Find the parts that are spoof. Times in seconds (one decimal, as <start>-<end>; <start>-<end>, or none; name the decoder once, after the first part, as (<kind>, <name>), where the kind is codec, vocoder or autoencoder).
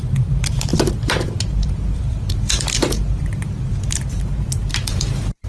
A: 0.0-5.5 (vocoder, BigVGAN v2)